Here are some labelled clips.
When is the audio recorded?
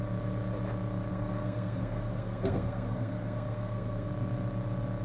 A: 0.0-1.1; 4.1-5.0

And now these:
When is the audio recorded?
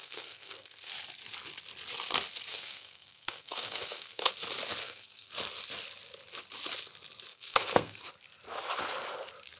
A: 0.9-2.5; 4.3-4.8; 5.3-7.3; 8.0-9.6